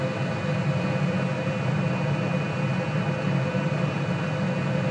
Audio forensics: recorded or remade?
recorded